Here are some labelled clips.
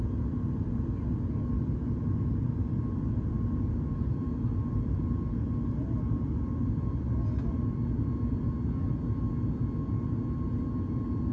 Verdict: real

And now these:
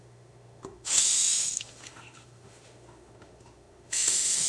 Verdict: fake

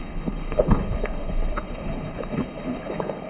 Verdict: fake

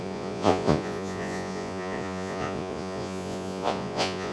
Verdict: fake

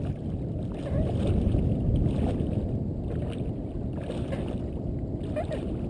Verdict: real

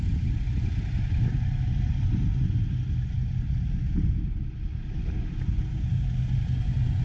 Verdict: real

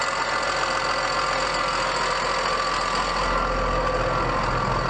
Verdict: real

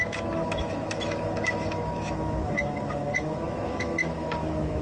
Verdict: fake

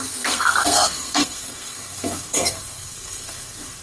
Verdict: fake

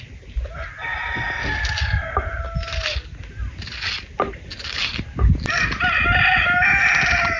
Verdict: real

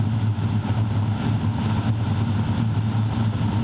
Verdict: real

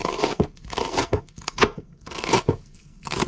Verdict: fake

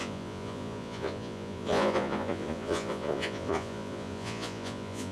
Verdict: fake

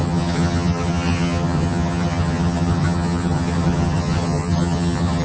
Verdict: fake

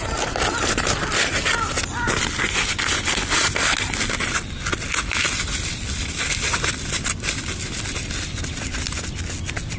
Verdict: real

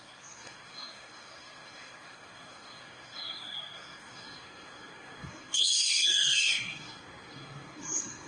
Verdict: fake